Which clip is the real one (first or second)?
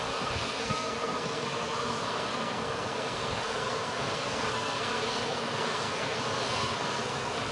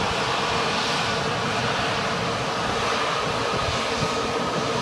second